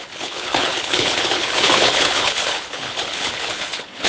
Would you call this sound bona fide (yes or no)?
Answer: no